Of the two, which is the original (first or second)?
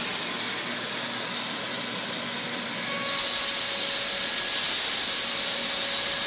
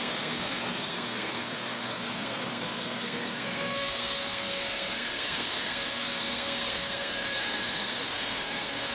first